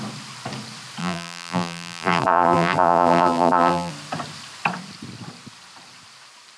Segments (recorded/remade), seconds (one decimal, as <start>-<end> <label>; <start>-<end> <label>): 0.0-1.0 recorded; 1.0-3.9 remade; 3.9-6.6 recorded